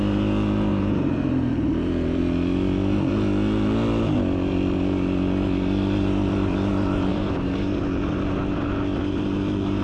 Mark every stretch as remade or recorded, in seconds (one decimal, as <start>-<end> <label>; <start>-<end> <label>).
0.0-0.7 recorded; 0.7-2.2 remade; 2.2-7.1 recorded; 7.1-7.8 remade; 7.8-9.8 recorded